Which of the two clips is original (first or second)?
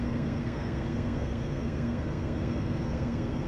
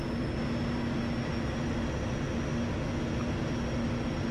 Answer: second